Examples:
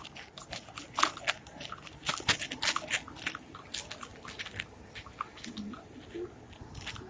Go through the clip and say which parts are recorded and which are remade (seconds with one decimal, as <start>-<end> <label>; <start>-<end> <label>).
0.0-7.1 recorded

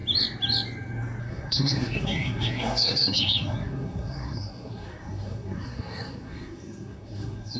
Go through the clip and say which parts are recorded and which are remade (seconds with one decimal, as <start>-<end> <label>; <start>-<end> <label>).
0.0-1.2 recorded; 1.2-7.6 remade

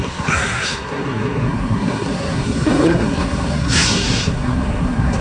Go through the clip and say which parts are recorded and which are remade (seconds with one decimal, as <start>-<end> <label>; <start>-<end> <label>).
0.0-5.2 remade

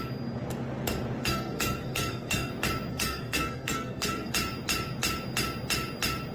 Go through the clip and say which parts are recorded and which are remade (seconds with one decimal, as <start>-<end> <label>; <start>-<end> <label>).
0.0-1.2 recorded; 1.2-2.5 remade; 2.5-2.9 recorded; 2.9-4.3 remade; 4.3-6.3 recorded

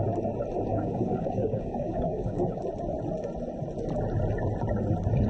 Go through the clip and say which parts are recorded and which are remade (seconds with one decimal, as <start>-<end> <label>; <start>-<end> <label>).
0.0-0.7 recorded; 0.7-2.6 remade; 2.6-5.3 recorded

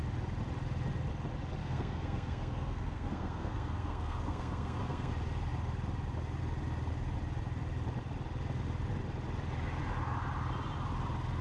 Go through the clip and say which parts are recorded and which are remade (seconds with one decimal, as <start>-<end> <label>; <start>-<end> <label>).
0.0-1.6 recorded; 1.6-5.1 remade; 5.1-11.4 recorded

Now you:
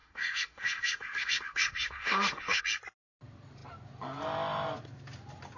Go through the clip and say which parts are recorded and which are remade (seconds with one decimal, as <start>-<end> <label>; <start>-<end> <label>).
0.0-2.6 remade; 2.6-5.6 recorded

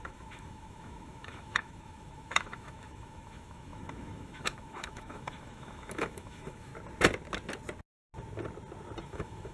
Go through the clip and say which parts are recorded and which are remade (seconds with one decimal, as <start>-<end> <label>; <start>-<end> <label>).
0.0-6.7 remade; 6.7-9.0 recorded; 9.0-9.5 remade